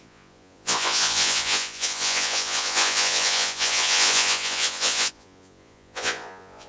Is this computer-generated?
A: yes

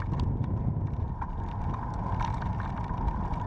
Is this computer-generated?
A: no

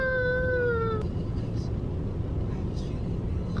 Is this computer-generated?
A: no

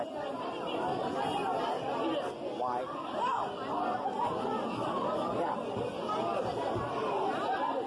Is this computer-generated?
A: no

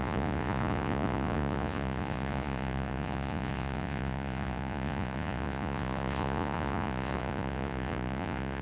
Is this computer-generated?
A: yes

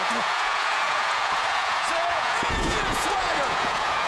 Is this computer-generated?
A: yes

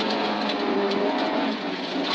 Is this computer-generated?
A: yes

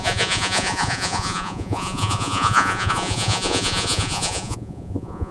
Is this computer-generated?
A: yes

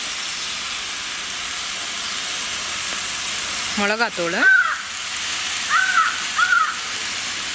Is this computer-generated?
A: no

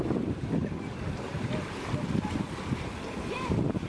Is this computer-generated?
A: no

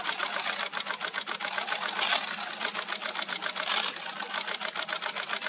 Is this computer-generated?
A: no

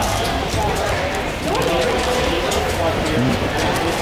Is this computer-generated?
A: no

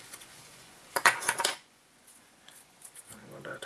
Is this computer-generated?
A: yes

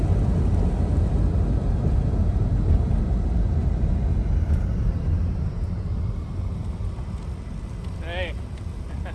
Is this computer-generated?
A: no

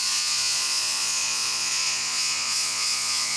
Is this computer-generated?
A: yes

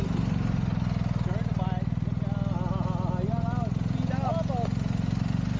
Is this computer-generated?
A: no